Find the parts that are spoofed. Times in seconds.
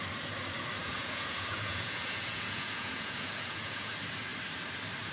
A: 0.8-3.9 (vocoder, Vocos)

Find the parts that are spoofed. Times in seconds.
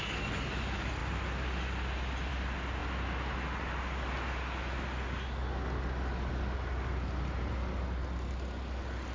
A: none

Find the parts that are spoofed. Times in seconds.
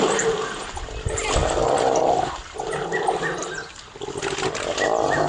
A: none